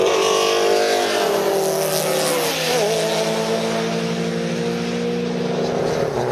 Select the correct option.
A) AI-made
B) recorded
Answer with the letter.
B